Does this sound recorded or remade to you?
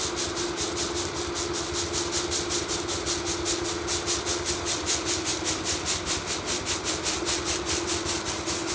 recorded